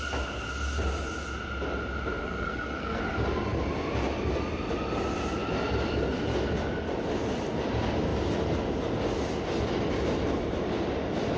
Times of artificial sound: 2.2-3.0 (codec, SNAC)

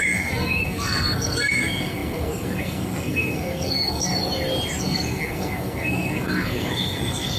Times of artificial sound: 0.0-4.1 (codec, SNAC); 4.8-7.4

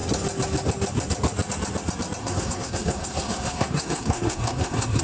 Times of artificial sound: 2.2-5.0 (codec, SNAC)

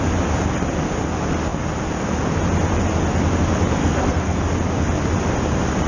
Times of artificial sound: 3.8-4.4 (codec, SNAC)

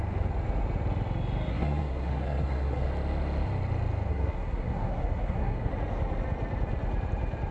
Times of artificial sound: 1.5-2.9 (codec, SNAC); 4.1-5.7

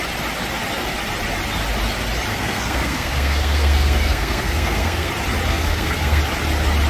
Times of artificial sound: 2.3-5.1 (codec, SNAC); 5.5-6.2

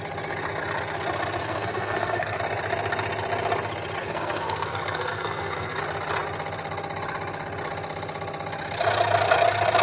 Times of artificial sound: 1.4-2.4 (codec, SNAC); 4.0-5.8